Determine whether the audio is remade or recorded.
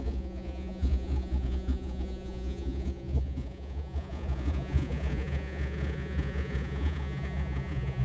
remade